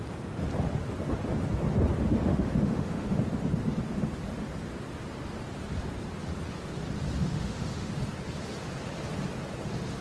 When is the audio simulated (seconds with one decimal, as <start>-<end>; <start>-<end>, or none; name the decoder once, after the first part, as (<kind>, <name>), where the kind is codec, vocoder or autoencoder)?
2.3-3.2 (autoencoder, DAC-VAE); 7.3-7.9